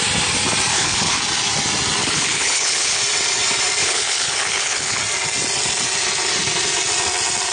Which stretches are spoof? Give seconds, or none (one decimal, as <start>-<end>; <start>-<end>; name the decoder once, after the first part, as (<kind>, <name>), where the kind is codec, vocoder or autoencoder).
0.7-1.2 (codec, HILCodec); 2.0-3.0; 3.8-5.0